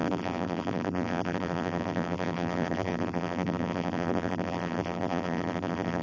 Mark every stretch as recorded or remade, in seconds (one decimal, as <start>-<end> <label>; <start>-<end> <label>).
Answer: 0.0-6.0 remade